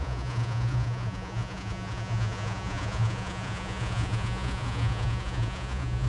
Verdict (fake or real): fake